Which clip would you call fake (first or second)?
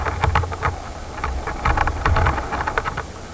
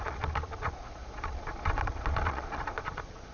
second